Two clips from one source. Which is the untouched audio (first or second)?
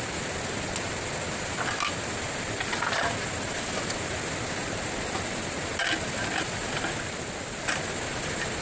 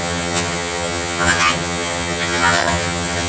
first